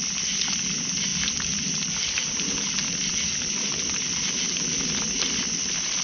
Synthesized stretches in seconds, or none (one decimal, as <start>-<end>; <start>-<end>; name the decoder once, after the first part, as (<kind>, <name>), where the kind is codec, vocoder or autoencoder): none